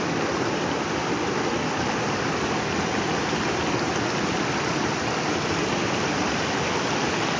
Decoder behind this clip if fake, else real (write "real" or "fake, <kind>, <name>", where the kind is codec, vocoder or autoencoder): real